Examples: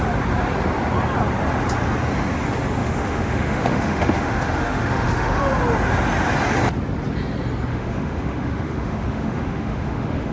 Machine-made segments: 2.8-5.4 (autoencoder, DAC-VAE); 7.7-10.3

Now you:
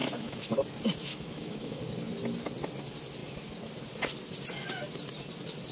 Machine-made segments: 0.0-0.5 (autoencoder, DAC-VAE); 1.1-1.8

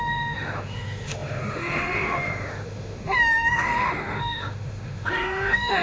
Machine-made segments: 0.0-5.8 (autoencoder, DAC-VAE)

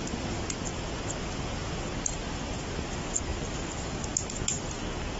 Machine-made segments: none

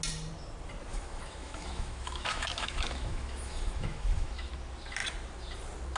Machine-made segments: 0.9-4.5 (autoencoder, DAC-VAE)